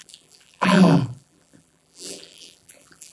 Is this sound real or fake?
fake